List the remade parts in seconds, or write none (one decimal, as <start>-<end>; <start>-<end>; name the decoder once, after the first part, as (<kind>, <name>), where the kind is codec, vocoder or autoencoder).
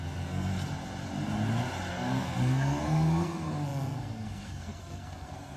0.0-0.5 (codec, SNAC); 1.9-5.6